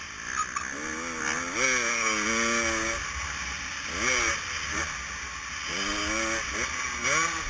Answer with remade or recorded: recorded